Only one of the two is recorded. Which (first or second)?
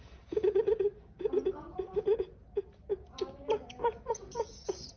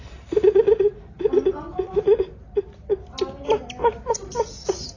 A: second